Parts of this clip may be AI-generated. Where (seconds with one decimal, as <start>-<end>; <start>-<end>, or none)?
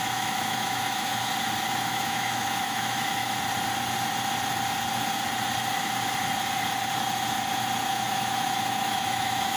0.0-1.3; 1.9-3.2; 7.9-9.6